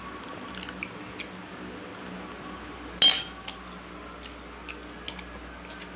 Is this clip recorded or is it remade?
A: recorded